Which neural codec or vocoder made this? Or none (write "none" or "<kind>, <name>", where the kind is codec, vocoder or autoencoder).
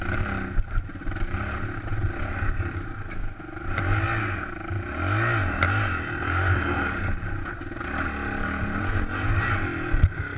none